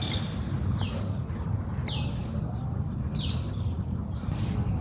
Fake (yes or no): no